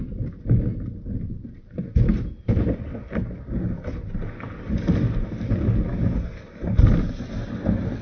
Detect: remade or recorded recorded